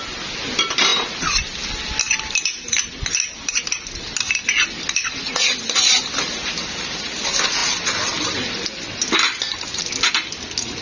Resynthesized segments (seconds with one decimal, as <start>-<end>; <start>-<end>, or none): none